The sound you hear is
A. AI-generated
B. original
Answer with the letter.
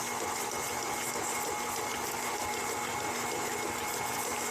B